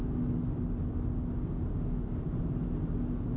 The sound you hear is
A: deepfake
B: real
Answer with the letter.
B